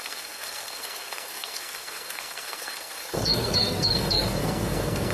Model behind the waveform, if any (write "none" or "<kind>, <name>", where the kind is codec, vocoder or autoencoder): codec, SNAC